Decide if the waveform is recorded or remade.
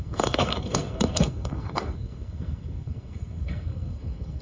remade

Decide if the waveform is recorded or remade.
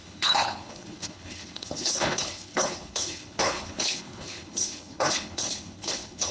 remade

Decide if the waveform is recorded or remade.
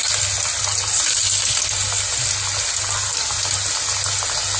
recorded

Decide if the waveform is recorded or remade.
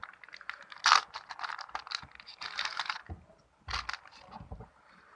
recorded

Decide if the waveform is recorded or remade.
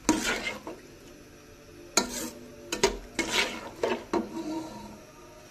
recorded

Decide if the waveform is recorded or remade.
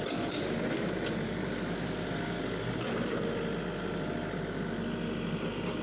recorded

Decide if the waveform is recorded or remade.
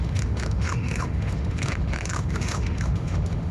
remade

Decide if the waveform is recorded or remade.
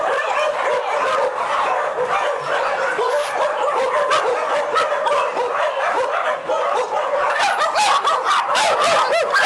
recorded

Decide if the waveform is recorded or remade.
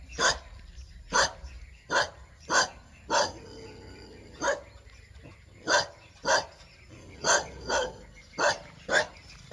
recorded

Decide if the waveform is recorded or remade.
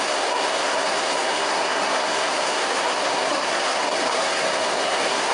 remade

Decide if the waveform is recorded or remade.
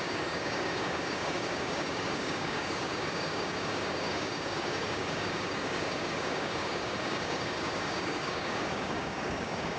remade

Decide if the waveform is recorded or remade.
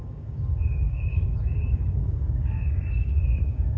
remade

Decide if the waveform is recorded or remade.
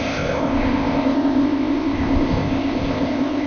remade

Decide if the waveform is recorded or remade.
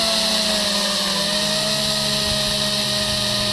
recorded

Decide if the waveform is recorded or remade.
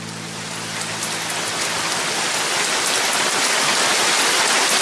recorded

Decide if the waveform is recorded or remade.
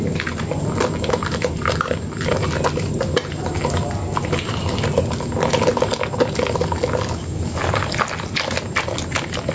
recorded